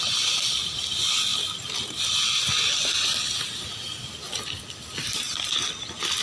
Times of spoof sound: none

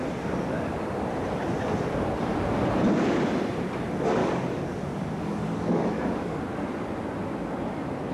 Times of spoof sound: 4.2-6.4 (codec, DAC)

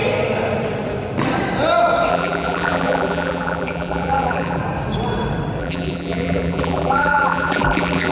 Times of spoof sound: 2.1-4.6 (vocoder, BigVGAN v2); 5.6-8.1

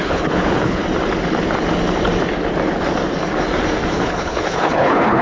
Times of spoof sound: 0.0-0.8 (codec, HILCodec); 3.9-5.2

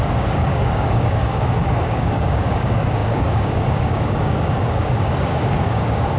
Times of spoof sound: 0.0-6.2 (codec, DAC)

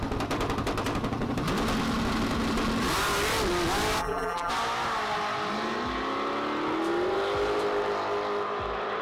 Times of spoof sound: 4.0-4.5 (vocoder, BigVGAN v2)

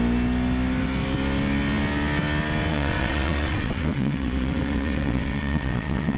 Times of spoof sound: 2.7-6.2 (vocoder, WaveNeXt)

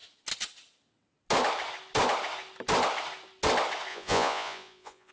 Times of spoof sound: 3.9-5.1 (vocoder, Vocos)